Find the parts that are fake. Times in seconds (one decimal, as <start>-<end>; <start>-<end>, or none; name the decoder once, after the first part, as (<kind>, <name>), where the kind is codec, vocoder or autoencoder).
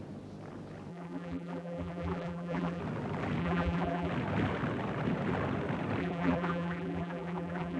0.9-2.8 (vocoder, BigVGAN v2); 3.4-4.1; 6.0-7.8